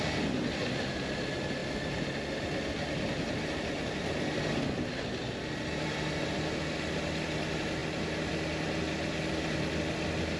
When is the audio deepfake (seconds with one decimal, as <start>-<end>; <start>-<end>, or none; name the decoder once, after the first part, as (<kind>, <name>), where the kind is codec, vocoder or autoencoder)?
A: none